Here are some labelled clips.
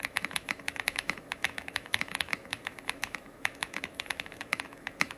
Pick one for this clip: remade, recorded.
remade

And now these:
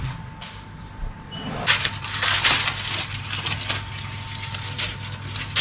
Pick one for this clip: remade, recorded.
recorded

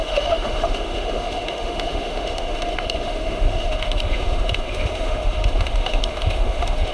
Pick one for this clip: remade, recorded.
remade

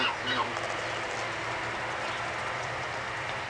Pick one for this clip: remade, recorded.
recorded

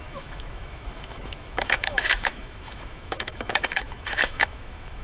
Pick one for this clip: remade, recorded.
remade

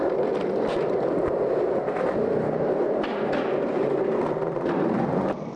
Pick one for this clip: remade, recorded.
recorded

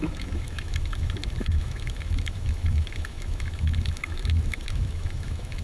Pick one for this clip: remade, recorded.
remade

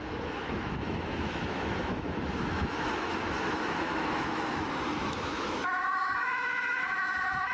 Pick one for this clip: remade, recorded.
remade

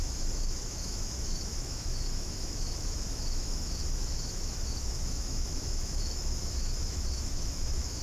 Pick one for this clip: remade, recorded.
remade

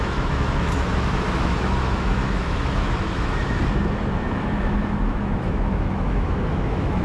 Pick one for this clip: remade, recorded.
remade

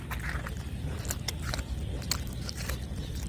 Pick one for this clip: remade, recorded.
recorded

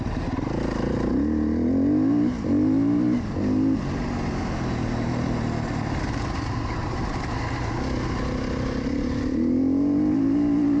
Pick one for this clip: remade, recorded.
recorded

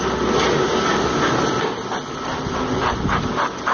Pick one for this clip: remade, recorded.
recorded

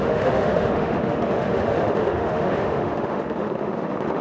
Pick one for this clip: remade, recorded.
remade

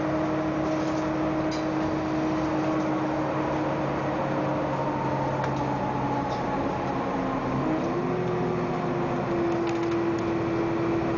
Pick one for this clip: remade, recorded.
recorded